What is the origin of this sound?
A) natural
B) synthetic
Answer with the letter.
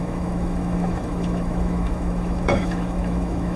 B